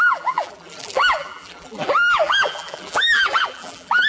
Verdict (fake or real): fake